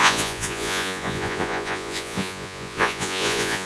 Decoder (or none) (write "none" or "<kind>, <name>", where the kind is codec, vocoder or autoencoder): vocoder, Vocos